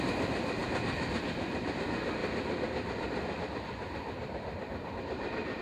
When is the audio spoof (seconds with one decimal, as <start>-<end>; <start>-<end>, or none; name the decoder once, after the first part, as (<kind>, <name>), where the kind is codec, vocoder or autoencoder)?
0.6-1.8 (vocoder, BigVGAN v2); 2.2-4.9